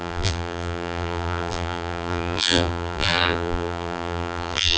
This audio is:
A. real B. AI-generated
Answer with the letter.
B